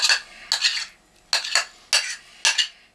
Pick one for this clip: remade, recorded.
recorded